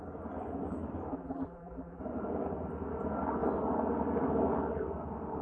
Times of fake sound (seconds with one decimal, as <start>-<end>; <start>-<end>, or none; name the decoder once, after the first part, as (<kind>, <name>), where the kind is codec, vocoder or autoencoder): 1.1-2.0 (vocoder, BigVGAN v2)